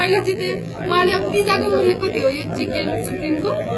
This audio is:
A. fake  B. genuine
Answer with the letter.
A